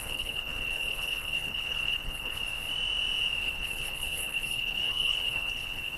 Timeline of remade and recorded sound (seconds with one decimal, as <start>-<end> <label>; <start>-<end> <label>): 0.0-2.4 remade; 2.4-3.4 recorded; 3.4-6.0 remade